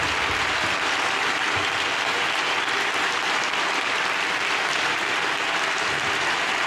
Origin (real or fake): fake